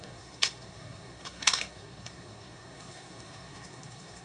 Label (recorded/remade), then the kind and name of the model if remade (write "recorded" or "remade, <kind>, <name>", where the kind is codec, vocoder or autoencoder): remade, codec, SNAC